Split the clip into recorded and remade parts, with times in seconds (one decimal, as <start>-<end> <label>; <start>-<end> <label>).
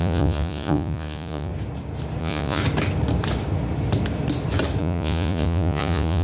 0.0-1.5 remade; 1.5-2.2 recorded; 2.2-2.6 remade; 2.6-4.8 recorded; 4.8-6.2 remade